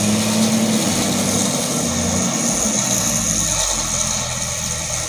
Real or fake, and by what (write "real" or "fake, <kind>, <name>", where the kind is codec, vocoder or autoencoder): real